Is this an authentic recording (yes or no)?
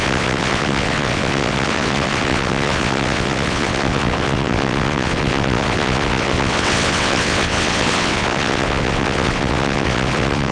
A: no